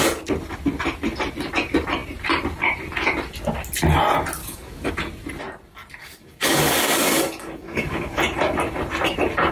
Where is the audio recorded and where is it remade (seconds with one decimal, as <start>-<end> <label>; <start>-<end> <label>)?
0.0-4.4 recorded; 4.4-4.9 remade; 4.9-6.0 recorded; 6.0-8.2 remade; 8.2-9.5 recorded